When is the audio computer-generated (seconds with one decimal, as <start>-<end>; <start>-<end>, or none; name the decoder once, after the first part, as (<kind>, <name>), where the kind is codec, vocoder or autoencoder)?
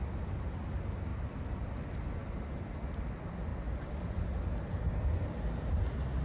1.1-1.7 (vocoder, BigVGAN v2)